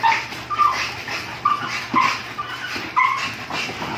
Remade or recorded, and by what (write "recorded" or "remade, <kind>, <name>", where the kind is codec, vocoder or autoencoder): recorded